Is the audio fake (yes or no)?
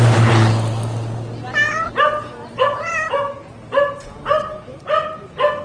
no